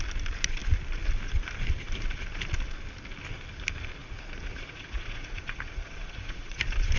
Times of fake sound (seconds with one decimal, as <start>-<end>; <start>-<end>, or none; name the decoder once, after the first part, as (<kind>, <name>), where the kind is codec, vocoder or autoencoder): 4.0-6.6 (vocoder, Vocos)